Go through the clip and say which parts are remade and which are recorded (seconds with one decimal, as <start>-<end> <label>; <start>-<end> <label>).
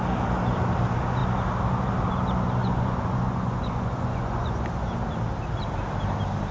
0.0-2.6 recorded; 2.6-4.6 remade; 4.6-6.5 recorded